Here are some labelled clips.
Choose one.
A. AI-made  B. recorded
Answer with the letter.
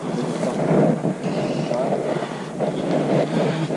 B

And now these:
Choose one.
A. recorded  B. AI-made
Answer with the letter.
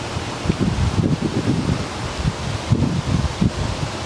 A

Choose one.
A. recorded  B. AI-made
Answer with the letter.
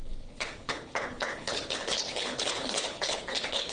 B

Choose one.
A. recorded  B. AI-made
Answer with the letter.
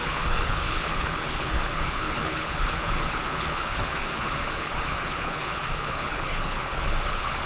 B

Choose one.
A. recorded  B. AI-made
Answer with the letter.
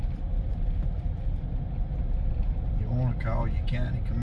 A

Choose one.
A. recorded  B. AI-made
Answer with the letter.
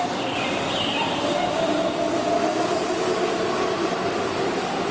A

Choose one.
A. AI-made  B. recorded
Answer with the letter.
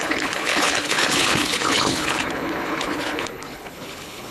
A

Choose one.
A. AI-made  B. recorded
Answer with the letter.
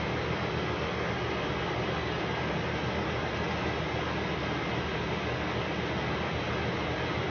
B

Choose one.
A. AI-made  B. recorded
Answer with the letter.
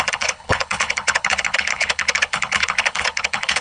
A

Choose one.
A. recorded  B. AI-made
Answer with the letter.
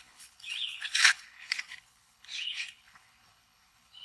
B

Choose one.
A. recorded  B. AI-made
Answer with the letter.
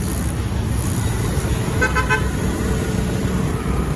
A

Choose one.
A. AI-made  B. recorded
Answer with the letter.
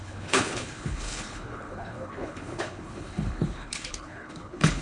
A